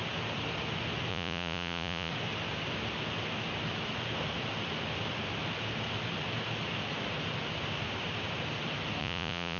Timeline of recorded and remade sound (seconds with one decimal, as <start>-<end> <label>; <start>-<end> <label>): 0.0-1.1 recorded; 1.1-2.1 remade; 2.1-9.0 recorded; 9.0-9.6 remade